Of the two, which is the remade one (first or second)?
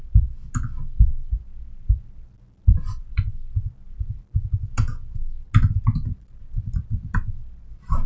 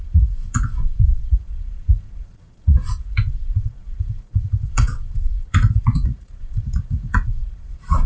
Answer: second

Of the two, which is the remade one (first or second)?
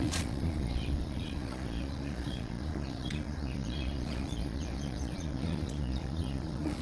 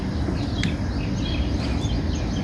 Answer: first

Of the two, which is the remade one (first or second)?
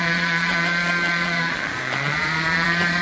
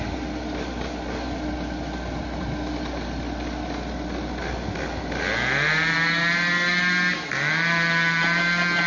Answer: first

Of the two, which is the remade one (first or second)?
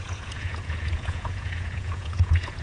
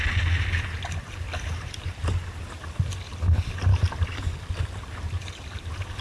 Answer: first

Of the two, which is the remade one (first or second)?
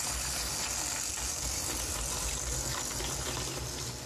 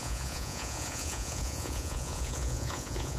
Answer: second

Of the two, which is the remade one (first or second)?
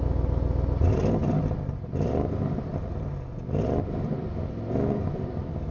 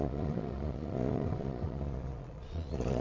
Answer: second